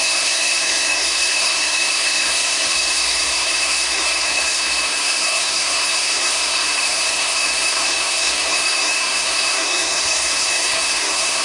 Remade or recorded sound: remade